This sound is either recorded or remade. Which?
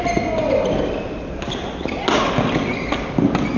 recorded